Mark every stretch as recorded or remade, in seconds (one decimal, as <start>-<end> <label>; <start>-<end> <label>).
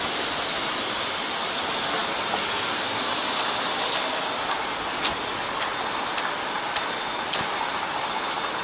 0.0-2.0 remade; 2.0-5.3 recorded; 5.3-8.6 remade